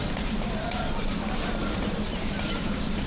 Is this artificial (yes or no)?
yes